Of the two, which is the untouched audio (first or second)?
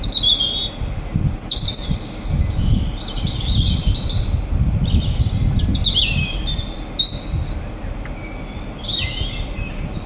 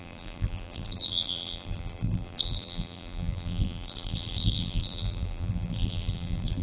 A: first